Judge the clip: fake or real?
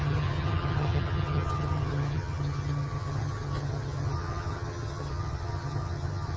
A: fake